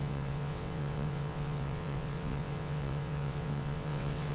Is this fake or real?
fake